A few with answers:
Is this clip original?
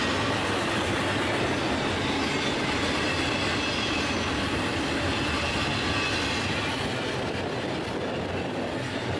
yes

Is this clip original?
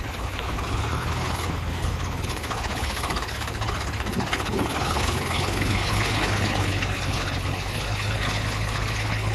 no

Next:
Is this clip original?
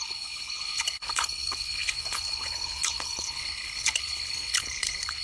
no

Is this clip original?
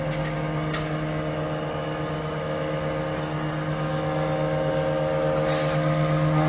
yes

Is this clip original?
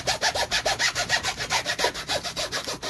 yes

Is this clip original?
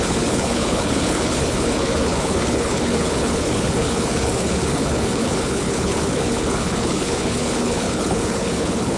no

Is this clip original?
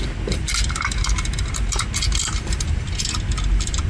yes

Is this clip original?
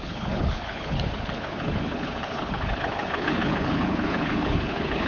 no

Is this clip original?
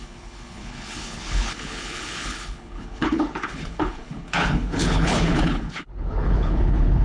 no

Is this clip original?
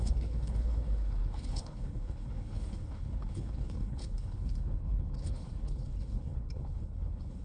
no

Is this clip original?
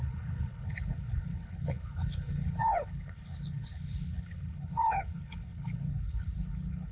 no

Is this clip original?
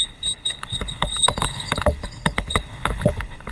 no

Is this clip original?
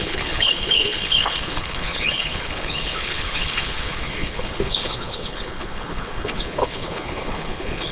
no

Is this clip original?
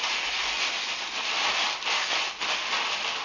yes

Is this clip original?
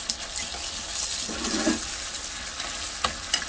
yes